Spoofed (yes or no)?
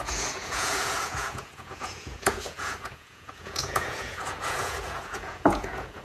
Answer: yes